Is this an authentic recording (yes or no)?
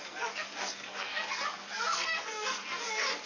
no